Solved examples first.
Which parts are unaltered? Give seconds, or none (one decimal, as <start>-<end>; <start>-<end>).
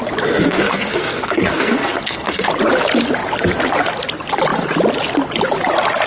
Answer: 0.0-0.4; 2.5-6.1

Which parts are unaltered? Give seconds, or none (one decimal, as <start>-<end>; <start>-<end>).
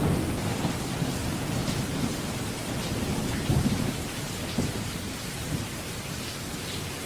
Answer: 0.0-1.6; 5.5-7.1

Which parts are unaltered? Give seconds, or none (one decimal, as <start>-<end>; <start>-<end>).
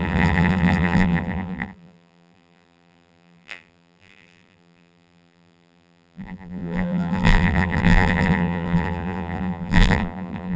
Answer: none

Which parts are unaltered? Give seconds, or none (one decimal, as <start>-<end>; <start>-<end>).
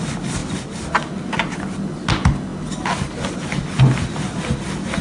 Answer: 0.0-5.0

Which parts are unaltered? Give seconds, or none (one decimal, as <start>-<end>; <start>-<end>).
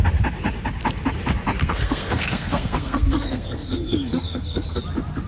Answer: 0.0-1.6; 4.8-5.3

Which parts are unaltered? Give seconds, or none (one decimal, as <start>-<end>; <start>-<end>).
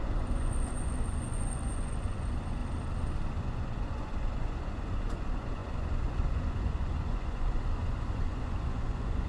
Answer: 2.6-3.4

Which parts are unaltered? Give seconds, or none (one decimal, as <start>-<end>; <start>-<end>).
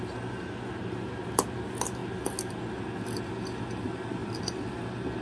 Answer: 0.0-4.2; 4.7-5.2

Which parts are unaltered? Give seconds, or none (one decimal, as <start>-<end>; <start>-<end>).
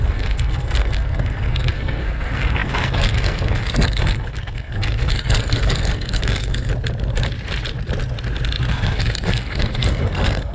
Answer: 6.7-8.7